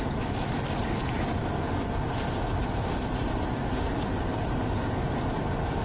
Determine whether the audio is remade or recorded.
recorded